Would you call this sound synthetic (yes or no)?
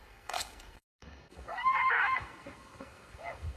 yes